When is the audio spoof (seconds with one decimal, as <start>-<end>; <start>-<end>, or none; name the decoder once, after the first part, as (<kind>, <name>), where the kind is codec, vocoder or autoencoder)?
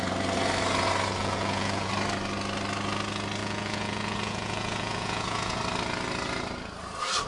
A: 1.2-1.9 (vocoder, Vocos); 3.4-5.6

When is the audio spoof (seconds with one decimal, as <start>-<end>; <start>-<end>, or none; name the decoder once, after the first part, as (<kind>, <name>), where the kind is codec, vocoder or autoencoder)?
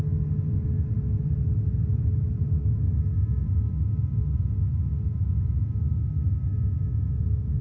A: none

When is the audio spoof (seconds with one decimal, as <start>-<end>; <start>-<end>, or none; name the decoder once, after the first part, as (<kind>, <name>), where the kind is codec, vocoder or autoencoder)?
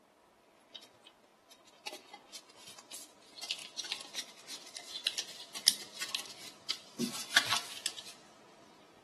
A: none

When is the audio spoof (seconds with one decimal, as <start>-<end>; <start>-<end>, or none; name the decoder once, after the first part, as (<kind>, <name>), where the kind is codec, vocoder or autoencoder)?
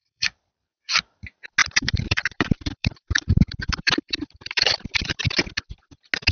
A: 0.0-0.8 (vocoder, BigVGAN v2); 1.6-5.4